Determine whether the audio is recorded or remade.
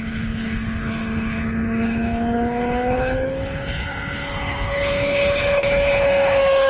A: remade